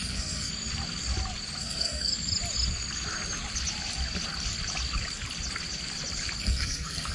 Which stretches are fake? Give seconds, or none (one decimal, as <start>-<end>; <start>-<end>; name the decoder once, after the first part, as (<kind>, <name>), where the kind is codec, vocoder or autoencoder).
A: 0.0-0.5 (codec, SNAC); 1.6-2.1; 6.4-7.1